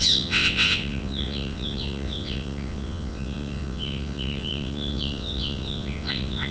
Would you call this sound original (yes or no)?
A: no